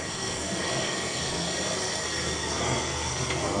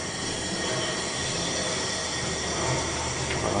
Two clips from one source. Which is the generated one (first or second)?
first